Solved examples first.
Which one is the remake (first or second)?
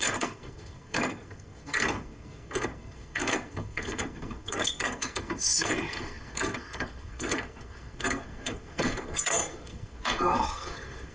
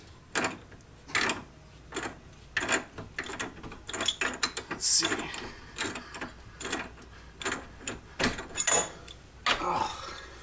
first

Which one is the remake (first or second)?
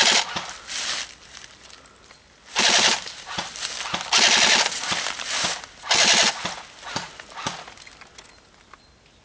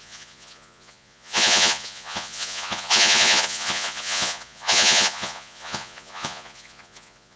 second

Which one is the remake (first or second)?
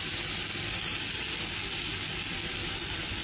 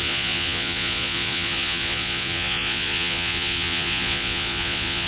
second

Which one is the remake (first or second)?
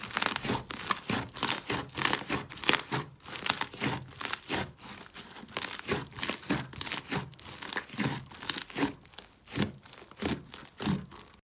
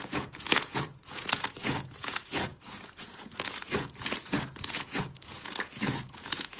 second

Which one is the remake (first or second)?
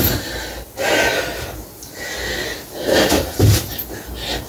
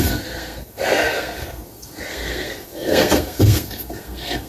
second